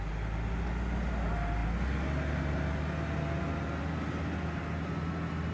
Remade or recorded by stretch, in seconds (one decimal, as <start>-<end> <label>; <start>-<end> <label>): 0.0-5.5 recorded